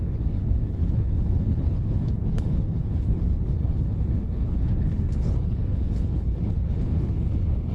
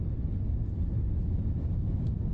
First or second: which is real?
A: second